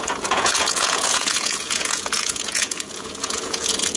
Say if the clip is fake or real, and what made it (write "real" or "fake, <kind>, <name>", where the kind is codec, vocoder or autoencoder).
fake, vocoder, Vocos